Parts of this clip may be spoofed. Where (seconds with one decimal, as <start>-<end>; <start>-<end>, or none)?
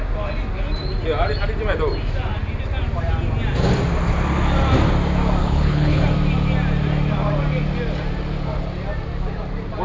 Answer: 5.4-6.0